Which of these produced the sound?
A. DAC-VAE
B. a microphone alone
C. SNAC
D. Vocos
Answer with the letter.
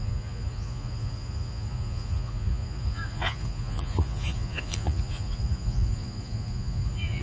D